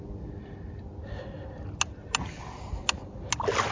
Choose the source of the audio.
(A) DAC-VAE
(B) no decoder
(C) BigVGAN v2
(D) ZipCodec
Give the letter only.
B